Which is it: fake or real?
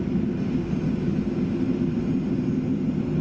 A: real